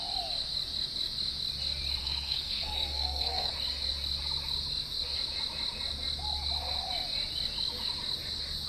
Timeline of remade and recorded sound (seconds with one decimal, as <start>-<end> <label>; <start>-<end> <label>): 0.0-2.0 recorded; 2.0-3.5 remade; 3.5-8.7 recorded